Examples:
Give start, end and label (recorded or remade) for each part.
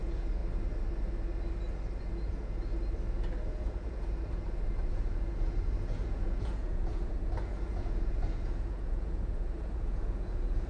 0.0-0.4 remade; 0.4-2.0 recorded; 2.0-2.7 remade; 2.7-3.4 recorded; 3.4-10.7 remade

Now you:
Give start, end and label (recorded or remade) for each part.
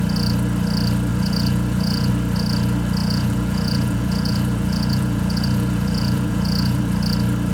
0.0-1.1 recorded; 1.1-2.1 remade; 2.1-3.0 recorded; 3.0-6.8 remade; 6.8-7.5 recorded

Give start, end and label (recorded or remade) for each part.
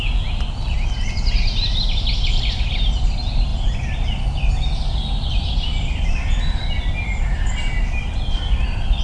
0.0-9.0 recorded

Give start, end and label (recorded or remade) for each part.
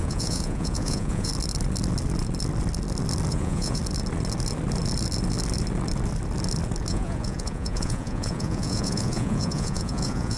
0.0-1.3 remade; 1.3-3.3 recorded; 3.3-3.8 remade; 3.8-6.9 recorded; 6.9-10.4 remade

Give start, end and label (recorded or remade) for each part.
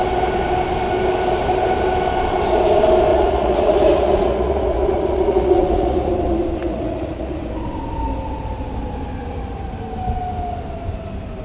0.0-3.1 recorded; 3.1-6.1 remade; 6.1-6.6 recorded; 6.6-7.4 remade; 7.4-11.4 recorded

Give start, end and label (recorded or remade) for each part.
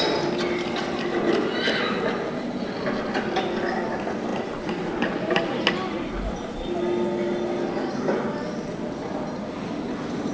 0.0-10.3 recorded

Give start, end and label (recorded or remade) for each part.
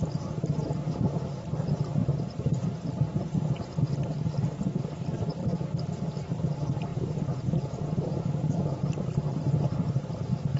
0.0-6.9 recorded; 6.9-8.8 remade; 8.8-10.6 recorded